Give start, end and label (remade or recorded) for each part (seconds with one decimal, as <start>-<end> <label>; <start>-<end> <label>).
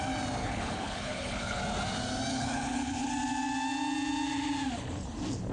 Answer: 0.0-0.4 recorded; 0.4-1.6 remade; 1.6-2.3 recorded; 2.3-3.1 remade; 3.1-5.5 recorded